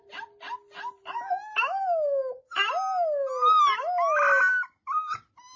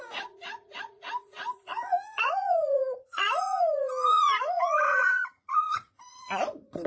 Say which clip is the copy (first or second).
second